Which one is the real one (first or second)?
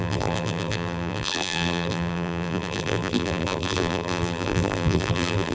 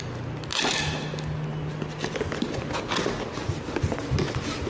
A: second